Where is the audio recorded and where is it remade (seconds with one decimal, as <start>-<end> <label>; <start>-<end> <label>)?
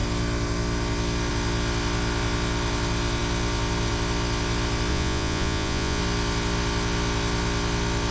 0.0-4.9 recorded; 4.9-6.0 remade; 6.0-8.1 recorded